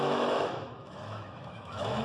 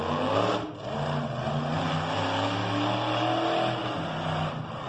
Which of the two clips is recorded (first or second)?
second